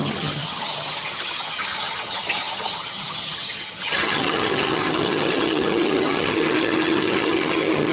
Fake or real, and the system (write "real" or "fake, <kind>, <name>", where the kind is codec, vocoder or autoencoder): fake, vocoder, HiFi-GAN